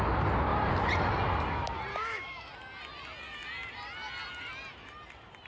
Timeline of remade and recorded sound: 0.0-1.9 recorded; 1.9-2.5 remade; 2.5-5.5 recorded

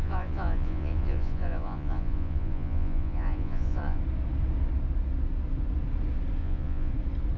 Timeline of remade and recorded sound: 0.0-4.0 remade; 4.0-6.4 recorded; 6.4-6.9 remade; 6.9-7.4 recorded

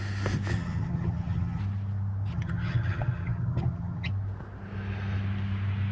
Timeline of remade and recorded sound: 0.0-0.5 recorded; 0.5-1.6 remade; 1.6-2.3 recorded; 2.3-4.1 remade; 4.1-5.9 recorded